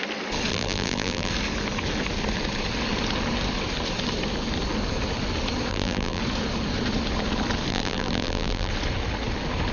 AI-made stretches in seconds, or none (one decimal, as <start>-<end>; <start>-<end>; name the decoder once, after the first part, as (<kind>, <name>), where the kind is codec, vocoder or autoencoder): 0.5-1.3 (vocoder, BigVGAN v2); 5.7-6.2; 7.7-8.7